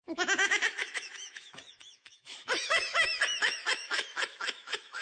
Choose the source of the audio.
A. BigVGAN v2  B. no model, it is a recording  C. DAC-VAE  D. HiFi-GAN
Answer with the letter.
C